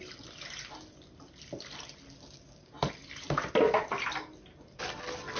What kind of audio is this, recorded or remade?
recorded